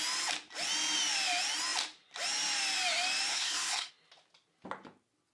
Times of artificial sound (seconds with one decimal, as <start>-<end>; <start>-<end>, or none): 3.3-3.9